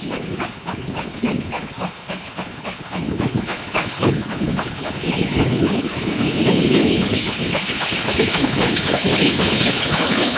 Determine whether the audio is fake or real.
fake